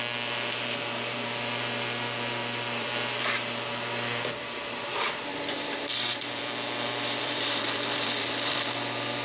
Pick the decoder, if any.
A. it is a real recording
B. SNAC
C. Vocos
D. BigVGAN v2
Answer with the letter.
D